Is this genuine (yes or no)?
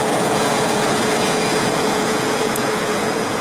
no